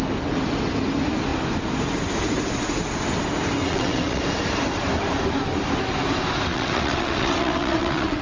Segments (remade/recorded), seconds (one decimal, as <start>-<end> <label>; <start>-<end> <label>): 0.0-3.6 recorded; 3.6-4.2 remade; 4.2-6.5 recorded; 6.5-8.2 remade